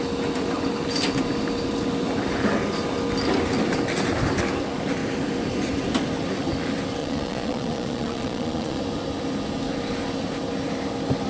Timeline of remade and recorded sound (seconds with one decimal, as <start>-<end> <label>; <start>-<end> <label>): 0.0-7.0 recorded; 7.0-8.8 remade; 8.8-11.3 recorded